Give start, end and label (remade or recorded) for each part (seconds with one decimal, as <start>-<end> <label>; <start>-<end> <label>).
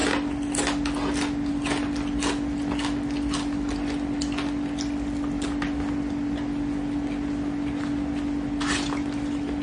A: 0.0-9.6 recorded